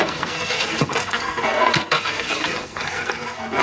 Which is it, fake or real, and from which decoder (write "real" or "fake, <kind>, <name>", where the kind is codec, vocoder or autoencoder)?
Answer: fake, codec, SNAC